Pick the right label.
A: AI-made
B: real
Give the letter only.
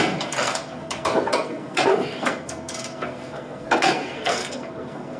A